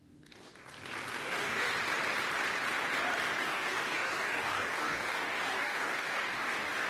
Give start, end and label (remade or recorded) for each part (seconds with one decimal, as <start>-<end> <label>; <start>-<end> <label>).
0.0-0.5 remade; 0.5-1.1 recorded; 1.1-1.7 remade; 1.7-3.4 recorded; 3.4-6.9 remade